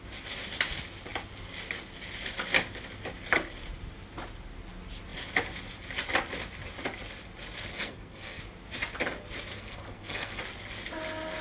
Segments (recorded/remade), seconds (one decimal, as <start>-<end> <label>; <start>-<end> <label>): 0.0-7.7 recorded; 7.7-8.4 remade; 8.4-9.5 recorded; 9.5-10.4 remade; 10.4-11.4 recorded